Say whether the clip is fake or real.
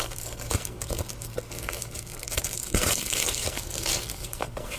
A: fake